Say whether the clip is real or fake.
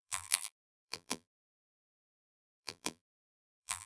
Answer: fake